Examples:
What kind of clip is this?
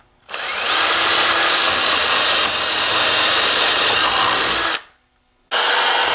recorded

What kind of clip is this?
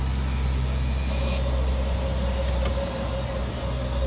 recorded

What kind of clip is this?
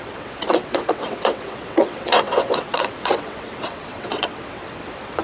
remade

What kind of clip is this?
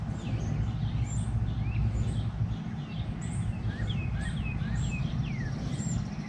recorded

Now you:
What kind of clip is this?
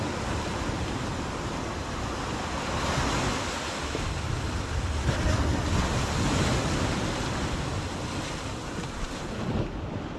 recorded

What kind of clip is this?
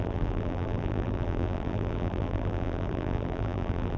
remade